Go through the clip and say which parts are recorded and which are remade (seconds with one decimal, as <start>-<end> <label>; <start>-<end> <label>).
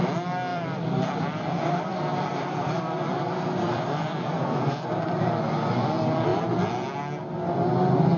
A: 0.0-0.5 recorded; 0.5-5.2 remade; 5.2-8.2 recorded